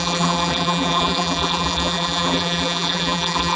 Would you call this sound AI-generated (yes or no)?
yes